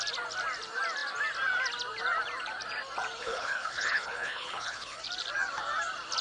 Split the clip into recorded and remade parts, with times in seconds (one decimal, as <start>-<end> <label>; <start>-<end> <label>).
0.0-3.2 recorded; 3.2-5.0 remade; 5.0-6.2 recorded